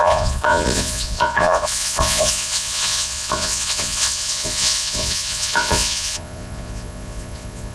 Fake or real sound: fake